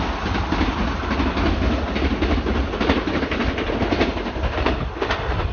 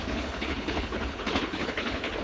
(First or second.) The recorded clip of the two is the first